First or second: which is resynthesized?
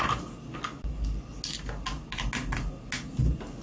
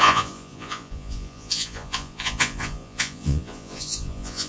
second